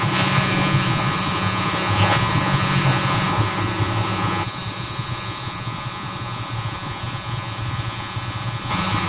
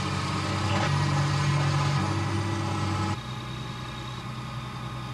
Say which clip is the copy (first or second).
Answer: first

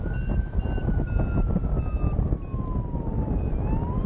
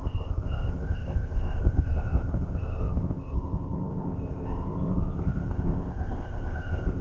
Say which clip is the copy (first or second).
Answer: second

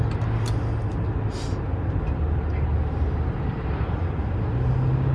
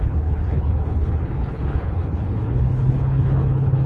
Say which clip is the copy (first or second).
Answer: second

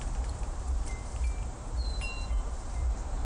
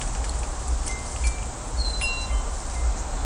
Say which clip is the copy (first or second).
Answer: first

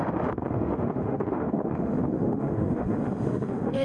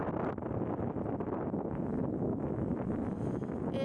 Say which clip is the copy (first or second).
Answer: first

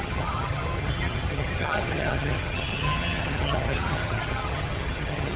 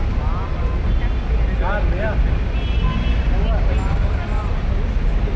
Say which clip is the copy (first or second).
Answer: first